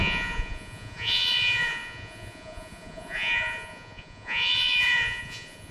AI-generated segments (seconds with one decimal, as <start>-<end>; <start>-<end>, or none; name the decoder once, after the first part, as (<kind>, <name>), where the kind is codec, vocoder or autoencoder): 0.0-5.7 (vocoder, Vocos)